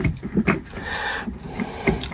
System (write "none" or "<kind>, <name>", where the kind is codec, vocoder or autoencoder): none